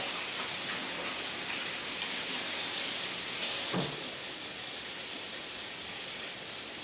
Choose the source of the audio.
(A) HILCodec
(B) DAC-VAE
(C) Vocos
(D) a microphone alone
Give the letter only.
D